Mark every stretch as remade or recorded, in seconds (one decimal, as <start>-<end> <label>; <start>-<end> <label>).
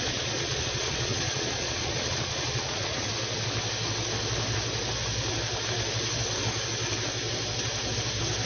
0.0-3.1 remade; 3.1-8.5 recorded